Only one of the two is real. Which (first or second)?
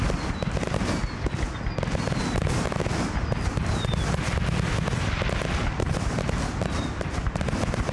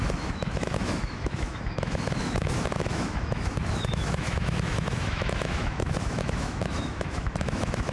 first